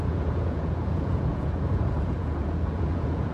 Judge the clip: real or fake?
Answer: fake